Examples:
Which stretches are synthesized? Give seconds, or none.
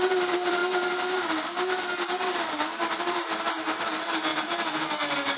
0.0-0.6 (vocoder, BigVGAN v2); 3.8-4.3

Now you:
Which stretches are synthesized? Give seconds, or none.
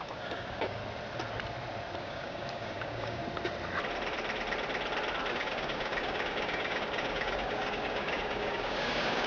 0.0-0.8 (codec, DAC); 2.0-3.2; 5.3-9.3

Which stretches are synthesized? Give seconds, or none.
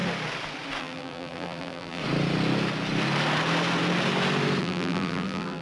0.8-2.0 (vocoder, BigVGAN v2); 4.6-5.6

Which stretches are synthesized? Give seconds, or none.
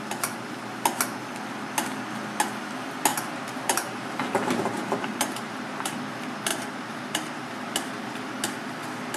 3.1-6.0 (vocoder, BigVGAN v2); 6.5-7.5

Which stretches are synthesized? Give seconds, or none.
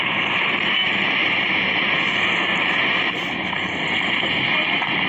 1.2-4.3 (vocoder, BigVGAN v2)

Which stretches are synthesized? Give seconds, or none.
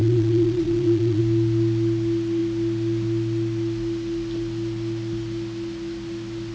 0.0-1.2 (vocoder, Vocos)